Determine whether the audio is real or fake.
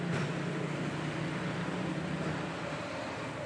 real